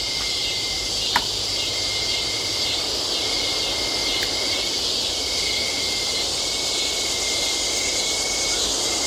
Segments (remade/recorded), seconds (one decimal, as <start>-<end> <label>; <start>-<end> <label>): 0.0-0.4 recorded; 0.4-2.8 remade; 2.8-9.1 recorded